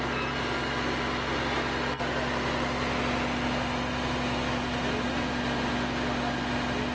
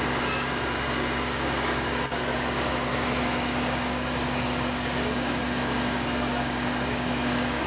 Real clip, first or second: first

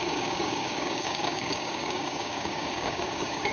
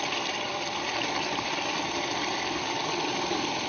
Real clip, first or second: second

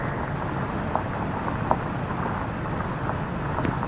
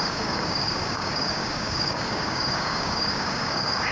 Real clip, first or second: first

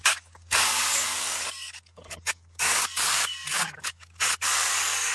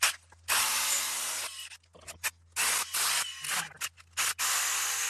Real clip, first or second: second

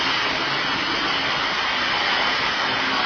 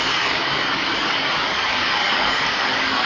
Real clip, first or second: first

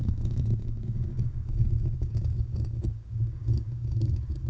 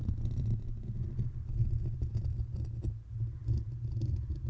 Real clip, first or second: second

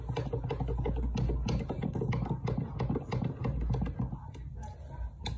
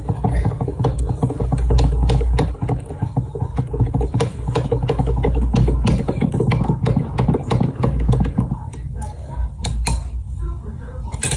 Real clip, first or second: first